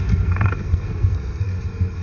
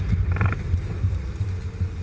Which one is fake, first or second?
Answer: first